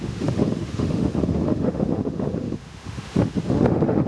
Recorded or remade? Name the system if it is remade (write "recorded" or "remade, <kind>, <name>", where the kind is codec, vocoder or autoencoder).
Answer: remade, autoencoder, DAC-VAE